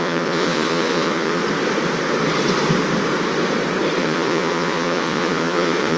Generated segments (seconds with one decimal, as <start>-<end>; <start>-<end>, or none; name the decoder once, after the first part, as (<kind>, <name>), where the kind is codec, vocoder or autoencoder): 0.0-1.4 (vocoder, Vocos); 4.0-6.0